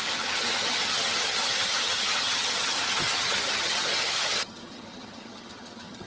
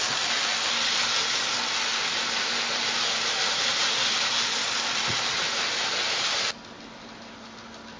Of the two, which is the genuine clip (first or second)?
second